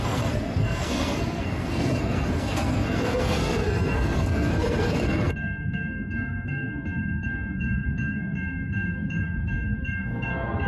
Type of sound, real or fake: fake